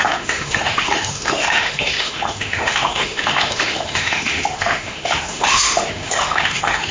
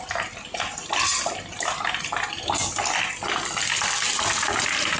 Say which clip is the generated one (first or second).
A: first